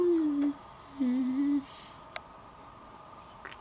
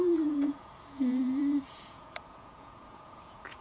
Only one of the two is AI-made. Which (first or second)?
second